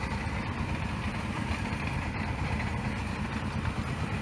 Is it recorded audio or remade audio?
recorded